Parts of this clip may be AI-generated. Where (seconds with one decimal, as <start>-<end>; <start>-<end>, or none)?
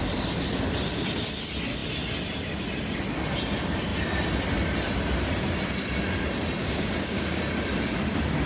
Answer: 6.6-7.4